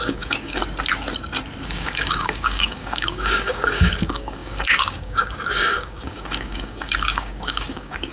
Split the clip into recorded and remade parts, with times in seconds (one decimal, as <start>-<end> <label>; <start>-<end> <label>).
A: 0.0-0.6 remade; 0.6-1.6 recorded; 1.6-8.1 remade